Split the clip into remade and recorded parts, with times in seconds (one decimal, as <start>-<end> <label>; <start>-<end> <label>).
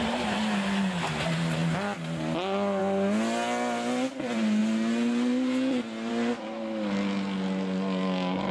0.0-8.5 recorded